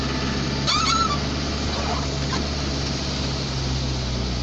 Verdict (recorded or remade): recorded